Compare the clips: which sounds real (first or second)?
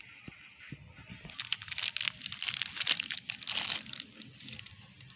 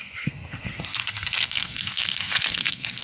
first